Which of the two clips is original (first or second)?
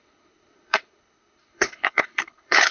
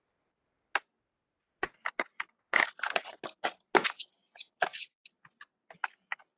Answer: second